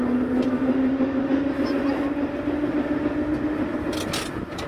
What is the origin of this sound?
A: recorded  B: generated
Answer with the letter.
A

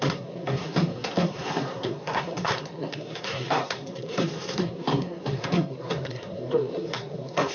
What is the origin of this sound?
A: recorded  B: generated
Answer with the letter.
B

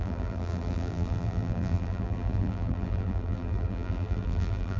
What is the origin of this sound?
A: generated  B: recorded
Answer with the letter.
A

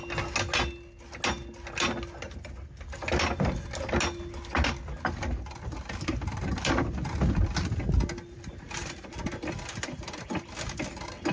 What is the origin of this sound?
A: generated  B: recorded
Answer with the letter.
B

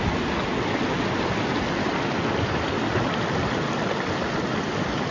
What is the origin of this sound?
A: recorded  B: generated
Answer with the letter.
A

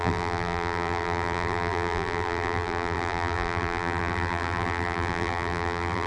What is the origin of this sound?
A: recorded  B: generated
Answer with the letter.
B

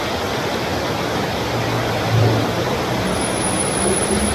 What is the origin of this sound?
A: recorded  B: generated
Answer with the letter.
A